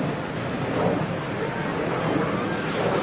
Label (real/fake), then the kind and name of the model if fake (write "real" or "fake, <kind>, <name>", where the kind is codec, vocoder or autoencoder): real